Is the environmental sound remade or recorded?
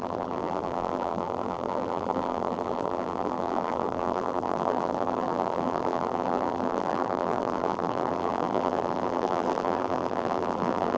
remade